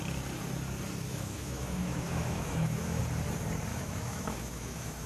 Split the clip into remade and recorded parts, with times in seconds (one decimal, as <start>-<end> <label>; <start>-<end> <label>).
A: 0.0-1.1 recorded; 1.1-3.0 remade; 3.0-3.7 recorded; 3.7-5.1 remade